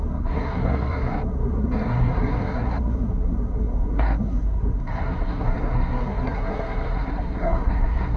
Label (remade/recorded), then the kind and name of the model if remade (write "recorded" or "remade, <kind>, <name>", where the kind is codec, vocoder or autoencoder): remade, codec, SNAC